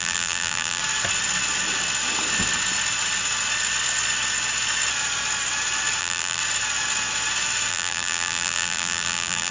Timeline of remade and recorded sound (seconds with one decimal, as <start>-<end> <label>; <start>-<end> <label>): 0.0-0.8 remade; 0.8-6.0 recorded; 6.0-6.4 remade; 6.4-7.7 recorded; 7.7-9.5 remade